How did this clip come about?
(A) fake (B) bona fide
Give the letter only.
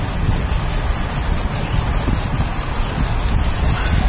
B